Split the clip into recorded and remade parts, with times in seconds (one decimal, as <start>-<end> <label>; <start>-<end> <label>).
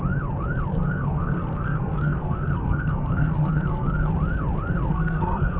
0.0-0.7 recorded; 0.7-4.1 remade; 4.1-4.9 recorded; 4.9-5.6 remade